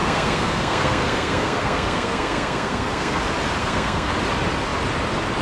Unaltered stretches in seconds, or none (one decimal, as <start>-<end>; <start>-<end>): 3.2-3.6; 4.1-5.4